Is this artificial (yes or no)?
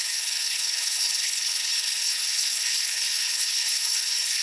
yes